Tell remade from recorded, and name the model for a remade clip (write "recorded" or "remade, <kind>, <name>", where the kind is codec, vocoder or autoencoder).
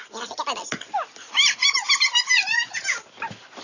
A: recorded